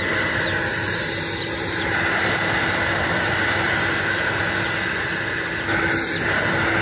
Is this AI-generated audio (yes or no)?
no